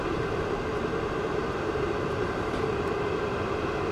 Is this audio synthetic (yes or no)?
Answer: yes